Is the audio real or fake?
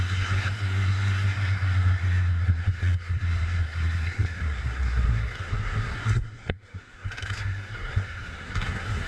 fake